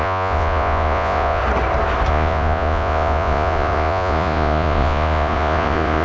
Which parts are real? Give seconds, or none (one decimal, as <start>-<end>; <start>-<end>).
1.4-2.1